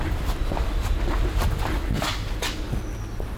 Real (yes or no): yes